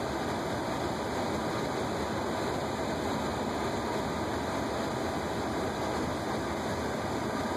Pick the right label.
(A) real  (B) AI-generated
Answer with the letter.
A